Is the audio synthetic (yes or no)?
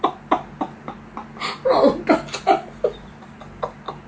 no